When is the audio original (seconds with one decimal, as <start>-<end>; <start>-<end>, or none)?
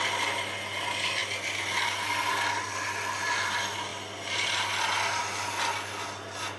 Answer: 0.0-6.6